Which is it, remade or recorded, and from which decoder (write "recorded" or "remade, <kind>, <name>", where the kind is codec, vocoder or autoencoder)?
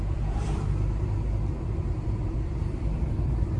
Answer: remade, vocoder, BigVGAN v2